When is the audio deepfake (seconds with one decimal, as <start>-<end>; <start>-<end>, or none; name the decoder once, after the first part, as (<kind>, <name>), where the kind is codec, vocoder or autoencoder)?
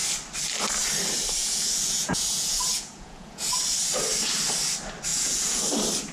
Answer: 1.4-3.5 (vocoder, Vocos); 5.1-5.6